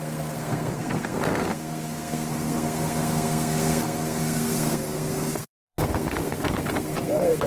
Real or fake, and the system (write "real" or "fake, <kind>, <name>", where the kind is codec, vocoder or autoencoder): fake, codec, SNAC